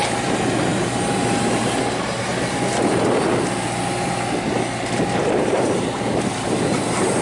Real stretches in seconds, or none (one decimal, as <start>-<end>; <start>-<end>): 2.3-5.2